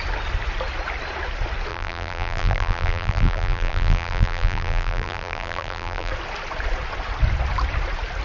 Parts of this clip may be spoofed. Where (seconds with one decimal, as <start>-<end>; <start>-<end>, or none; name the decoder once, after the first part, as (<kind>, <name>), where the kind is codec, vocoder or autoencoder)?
1.7-6.1 (vocoder, BigVGAN v2)